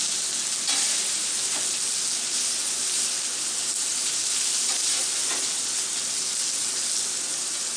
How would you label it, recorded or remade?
recorded